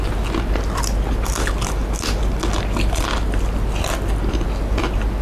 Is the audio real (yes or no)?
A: yes